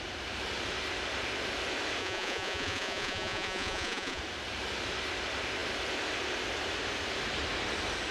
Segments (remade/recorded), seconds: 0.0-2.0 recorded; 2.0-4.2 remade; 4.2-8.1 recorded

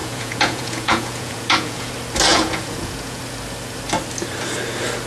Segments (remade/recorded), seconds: 0.0-1.9 remade; 1.9-2.3 recorded; 2.3-3.2 remade; 3.2-5.1 recorded

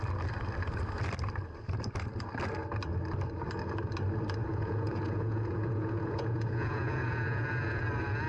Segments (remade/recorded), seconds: 0.0-4.4 recorded; 4.4-7.8 remade; 7.8-8.3 recorded

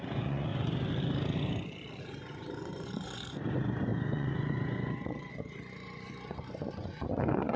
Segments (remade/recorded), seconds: 0.0-0.5 remade; 0.5-2.0 recorded; 2.0-7.6 remade

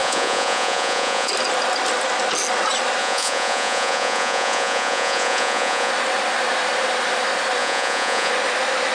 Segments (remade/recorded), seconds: 0.0-1.3 remade; 1.3-3.0 recorded; 3.0-5.9 remade; 5.9-7.6 recorded; 7.6-8.3 remade; 8.3-8.9 recorded

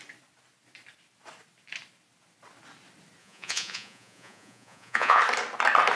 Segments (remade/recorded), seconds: 0.0-3.2 recorded; 3.2-5.2 remade; 5.2-6.0 recorded